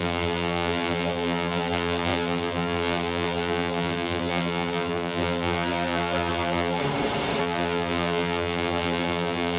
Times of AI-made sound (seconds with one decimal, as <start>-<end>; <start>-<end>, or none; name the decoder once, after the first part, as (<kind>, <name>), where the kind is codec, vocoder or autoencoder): 0.0-6.8 (vocoder, BigVGAN v2); 7.4-9.6